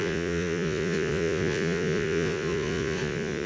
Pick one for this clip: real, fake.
fake